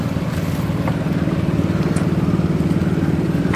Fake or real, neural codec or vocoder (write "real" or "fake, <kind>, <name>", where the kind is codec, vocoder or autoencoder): real